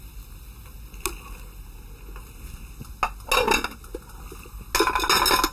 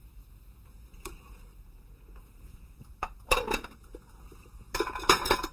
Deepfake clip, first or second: second